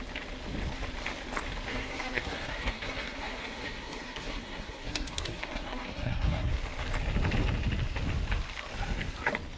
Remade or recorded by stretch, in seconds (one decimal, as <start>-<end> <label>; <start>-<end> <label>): 0.0-1.7 recorded; 1.7-6.5 remade; 6.5-9.6 recorded